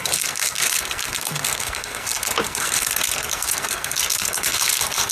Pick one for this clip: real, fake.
fake